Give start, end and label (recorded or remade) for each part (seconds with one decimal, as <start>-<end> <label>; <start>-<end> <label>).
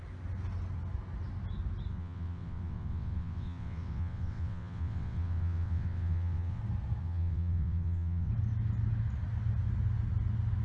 0.0-1.9 recorded; 1.9-6.6 remade; 6.6-7.0 recorded; 7.0-8.3 remade; 8.3-10.6 recorded